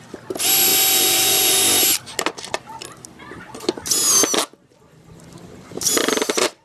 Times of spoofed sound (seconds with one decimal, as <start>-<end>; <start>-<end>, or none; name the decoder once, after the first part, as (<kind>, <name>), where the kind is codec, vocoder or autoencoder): none